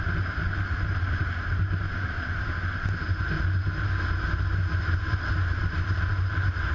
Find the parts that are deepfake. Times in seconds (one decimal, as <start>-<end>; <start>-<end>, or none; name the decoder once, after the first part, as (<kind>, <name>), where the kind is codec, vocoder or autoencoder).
none